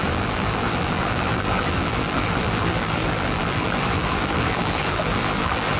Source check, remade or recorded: remade